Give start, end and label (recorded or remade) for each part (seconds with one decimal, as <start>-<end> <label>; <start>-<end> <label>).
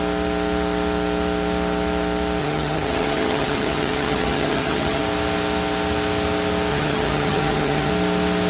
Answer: 0.0-2.4 recorded; 2.4-5.0 remade; 5.0-6.7 recorded; 6.7-7.9 remade; 7.9-8.5 recorded